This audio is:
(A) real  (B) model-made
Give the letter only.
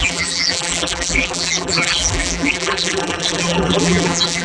B